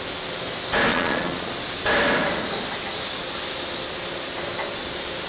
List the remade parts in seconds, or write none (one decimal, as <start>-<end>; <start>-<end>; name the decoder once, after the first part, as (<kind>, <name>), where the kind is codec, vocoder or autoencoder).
0.9-1.5 (vocoder, Vocos)